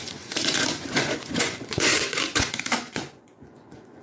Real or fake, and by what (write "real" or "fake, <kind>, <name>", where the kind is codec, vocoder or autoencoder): fake, vocoder, Vocos